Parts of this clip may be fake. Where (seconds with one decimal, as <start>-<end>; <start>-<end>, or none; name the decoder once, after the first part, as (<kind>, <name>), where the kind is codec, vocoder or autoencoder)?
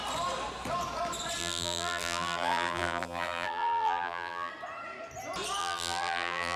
1.4-4.5 (vocoder, BigVGAN v2); 5.6-6.6